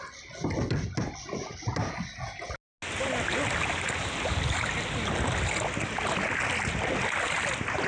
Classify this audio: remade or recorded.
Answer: recorded